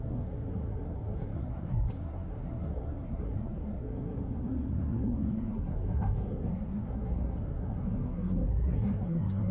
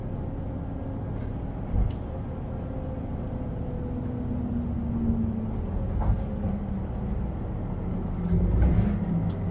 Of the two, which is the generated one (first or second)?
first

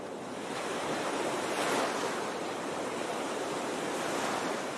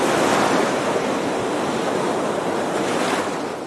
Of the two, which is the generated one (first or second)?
first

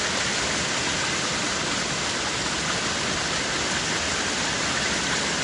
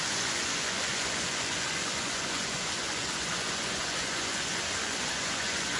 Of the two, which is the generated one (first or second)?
second